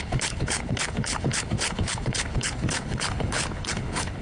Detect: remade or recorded remade